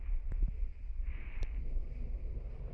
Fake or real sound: real